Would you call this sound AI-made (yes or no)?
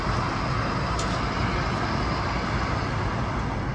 no